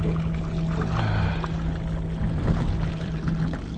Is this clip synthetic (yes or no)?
no